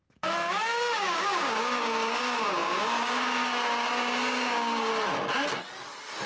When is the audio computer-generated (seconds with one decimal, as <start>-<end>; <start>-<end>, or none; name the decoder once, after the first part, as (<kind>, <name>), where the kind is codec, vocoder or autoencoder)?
0.0-4.9 (codec, DAC)